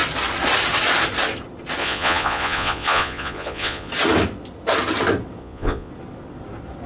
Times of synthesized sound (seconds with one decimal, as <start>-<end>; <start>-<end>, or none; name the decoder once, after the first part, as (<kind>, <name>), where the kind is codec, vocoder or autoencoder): 1.8-3.9 (vocoder, Vocos); 5.4-5.9